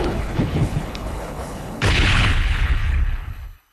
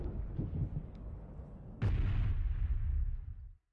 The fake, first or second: first